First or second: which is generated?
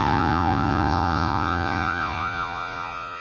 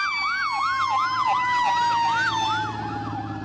first